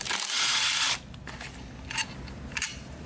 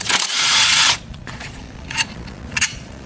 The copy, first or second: second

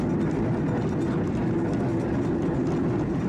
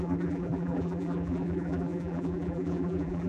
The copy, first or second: second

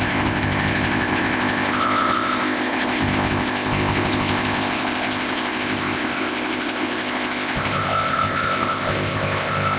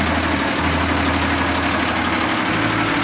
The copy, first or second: first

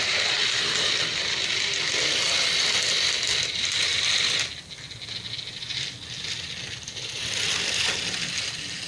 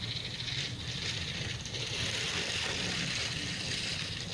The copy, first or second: second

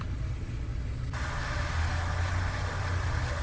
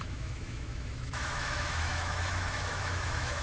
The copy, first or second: second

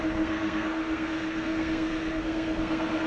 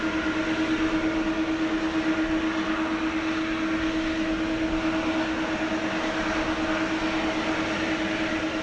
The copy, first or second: first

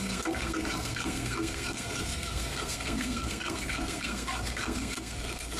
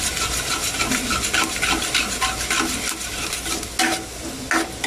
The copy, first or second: first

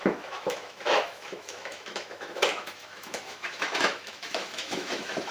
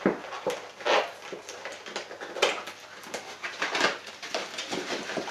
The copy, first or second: first